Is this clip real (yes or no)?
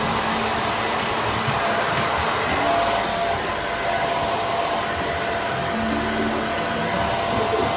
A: yes